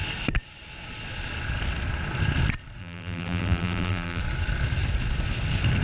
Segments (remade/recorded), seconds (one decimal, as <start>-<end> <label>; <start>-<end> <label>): 0.0-2.8 recorded; 2.8-4.2 remade; 4.2-5.8 recorded